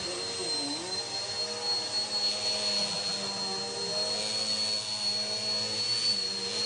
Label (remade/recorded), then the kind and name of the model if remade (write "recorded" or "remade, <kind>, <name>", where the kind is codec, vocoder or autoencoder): recorded